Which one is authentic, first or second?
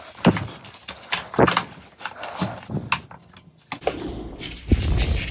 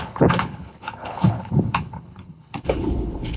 first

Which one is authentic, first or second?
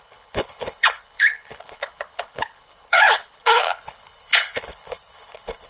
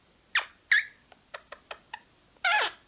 second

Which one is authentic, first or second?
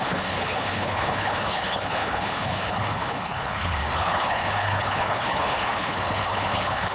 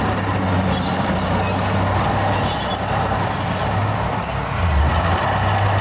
second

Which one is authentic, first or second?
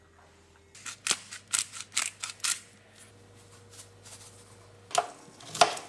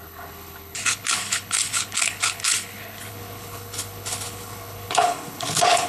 first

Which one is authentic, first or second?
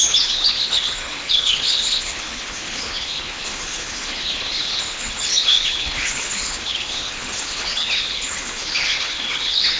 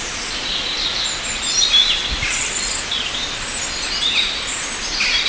second